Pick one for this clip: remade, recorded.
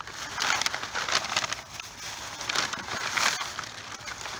recorded